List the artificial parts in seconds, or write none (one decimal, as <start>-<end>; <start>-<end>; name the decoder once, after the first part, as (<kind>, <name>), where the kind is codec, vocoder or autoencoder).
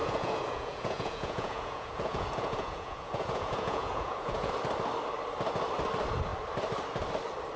0.0-4.5 (vocoder, Vocos)